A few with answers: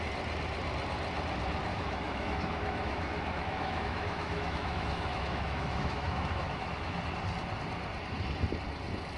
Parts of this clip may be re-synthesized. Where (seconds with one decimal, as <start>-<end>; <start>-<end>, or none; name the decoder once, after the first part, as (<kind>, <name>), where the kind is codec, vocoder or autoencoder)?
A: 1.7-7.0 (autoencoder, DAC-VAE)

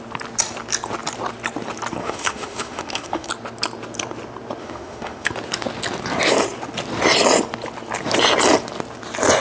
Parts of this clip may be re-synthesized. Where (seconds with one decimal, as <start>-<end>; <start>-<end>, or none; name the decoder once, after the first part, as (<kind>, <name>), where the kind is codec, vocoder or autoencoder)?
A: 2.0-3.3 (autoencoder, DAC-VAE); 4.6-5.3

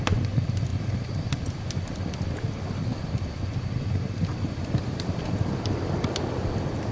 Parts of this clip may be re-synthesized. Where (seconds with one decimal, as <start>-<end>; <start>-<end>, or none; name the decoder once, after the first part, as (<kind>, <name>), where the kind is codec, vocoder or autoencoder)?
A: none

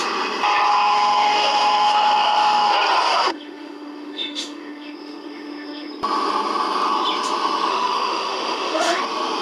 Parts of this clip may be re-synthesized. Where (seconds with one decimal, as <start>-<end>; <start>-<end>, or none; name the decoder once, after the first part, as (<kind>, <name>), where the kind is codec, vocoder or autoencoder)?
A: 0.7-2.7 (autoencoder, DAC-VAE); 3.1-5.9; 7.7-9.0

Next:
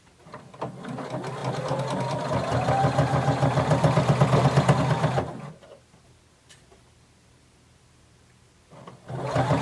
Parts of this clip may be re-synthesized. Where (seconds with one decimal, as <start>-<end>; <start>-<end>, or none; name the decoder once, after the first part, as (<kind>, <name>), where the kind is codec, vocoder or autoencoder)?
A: none